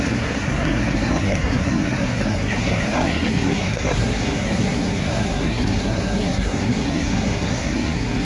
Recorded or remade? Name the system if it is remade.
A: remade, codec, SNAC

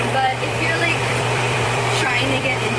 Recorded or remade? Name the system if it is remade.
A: remade, vocoder, BigVGAN v2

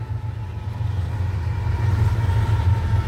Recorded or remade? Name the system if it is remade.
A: recorded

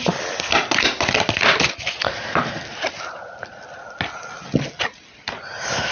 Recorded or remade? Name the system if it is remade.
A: recorded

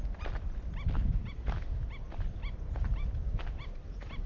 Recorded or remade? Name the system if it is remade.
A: recorded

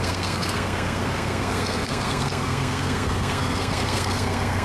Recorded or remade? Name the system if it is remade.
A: remade, codec, SNAC